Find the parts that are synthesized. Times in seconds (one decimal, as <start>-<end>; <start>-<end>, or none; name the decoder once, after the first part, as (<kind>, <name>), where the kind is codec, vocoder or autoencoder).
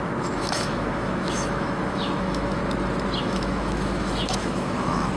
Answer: 0.0-2.6 (autoencoder, DAC-VAE); 3.2-5.2